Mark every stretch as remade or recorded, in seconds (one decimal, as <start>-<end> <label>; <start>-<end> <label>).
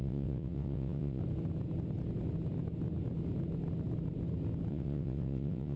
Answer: 0.0-1.2 remade; 1.2-4.7 recorded; 4.7-5.8 remade